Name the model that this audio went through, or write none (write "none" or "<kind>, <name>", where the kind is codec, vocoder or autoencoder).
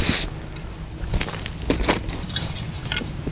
none